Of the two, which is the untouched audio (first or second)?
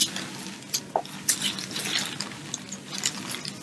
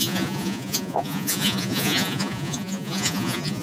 first